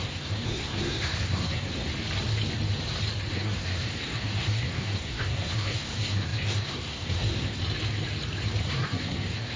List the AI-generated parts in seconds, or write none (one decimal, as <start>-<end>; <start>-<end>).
0.0-1.9; 3.3-7.6; 8.6-9.6